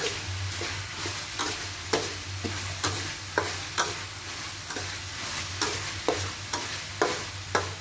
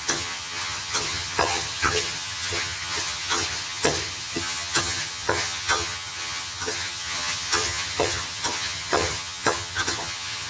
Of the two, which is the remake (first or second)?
second